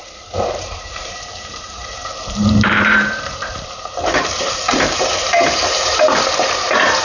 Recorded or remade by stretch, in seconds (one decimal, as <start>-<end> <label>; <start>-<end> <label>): 0.0-7.0 remade